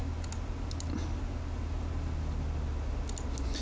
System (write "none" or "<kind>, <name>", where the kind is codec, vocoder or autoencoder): none